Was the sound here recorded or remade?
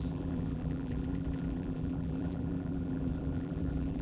remade